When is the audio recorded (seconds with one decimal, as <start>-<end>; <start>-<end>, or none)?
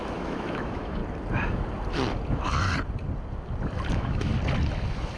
1.0-3.9; 4.3-5.2